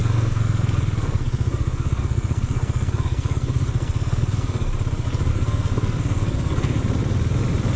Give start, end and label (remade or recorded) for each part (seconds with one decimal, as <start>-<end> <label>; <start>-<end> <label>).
0.0-4.7 remade; 4.7-5.3 recorded; 5.3-6.8 remade; 6.8-7.8 recorded